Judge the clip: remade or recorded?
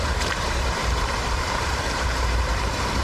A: remade